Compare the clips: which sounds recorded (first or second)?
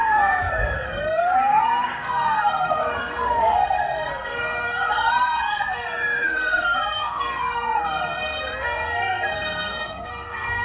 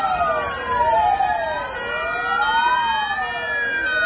second